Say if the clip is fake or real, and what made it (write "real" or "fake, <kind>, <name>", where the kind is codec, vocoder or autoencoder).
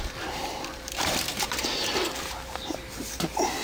fake, vocoder, BigVGAN v2